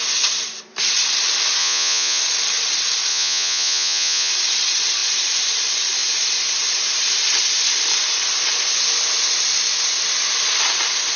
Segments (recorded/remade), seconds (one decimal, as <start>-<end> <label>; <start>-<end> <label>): 0.0-1.6 recorded; 1.6-2.2 remade; 2.2-3.1 recorded; 3.1-4.3 remade; 4.3-11.2 recorded